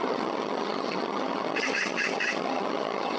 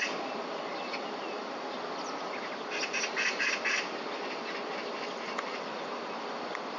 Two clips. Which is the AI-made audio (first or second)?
first